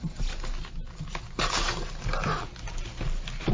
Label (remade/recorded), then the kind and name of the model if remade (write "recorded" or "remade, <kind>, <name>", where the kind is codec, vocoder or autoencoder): recorded